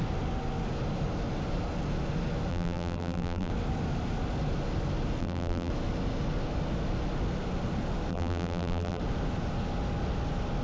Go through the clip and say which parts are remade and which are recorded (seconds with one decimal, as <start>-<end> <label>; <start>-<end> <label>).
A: 0.0-2.5 recorded; 2.5-3.5 remade; 3.5-5.2 recorded; 5.2-5.7 remade; 5.7-8.1 recorded; 8.1-9.0 remade; 9.0-10.6 recorded

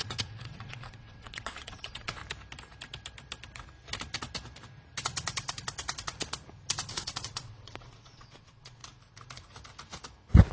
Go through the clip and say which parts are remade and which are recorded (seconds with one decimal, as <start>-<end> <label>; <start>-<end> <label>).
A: 0.0-2.2 remade; 2.2-6.9 recorded; 6.9-8.8 remade; 8.8-10.5 recorded

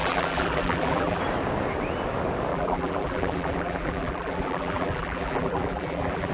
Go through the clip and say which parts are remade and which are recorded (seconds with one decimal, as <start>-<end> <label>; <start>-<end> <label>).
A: 0.0-1.2 remade; 1.2-2.5 recorded; 2.5-6.3 remade

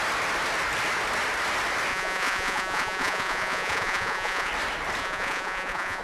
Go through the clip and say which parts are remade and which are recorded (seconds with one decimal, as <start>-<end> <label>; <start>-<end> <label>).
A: 0.0-1.9 recorded; 1.9-4.5 remade; 4.5-5.0 recorded; 5.0-6.0 remade

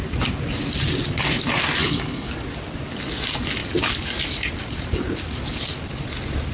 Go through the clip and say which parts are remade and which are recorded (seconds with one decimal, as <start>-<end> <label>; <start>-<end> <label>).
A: 0.0-1.8 recorded; 1.8-2.3 remade; 2.3-6.5 recorded